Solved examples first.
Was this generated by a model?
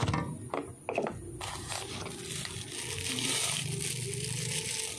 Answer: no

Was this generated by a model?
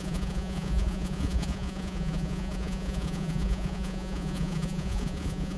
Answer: yes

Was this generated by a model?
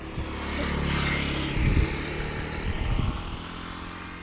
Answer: no